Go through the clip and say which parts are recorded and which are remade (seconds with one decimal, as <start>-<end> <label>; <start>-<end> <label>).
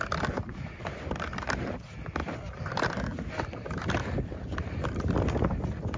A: 0.0-6.0 recorded